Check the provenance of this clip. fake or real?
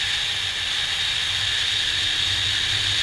real